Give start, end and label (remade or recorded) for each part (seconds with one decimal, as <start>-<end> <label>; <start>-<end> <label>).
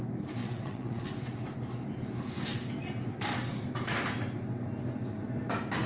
0.0-0.4 recorded; 0.4-1.0 remade; 1.0-5.9 recorded